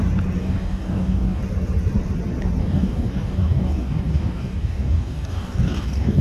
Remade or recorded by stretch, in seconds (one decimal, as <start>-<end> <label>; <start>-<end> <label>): 0.0-0.4 recorded; 0.4-1.4 remade; 1.4-2.6 recorded; 2.6-6.2 remade